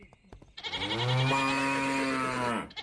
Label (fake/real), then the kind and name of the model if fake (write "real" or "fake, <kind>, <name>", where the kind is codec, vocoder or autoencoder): real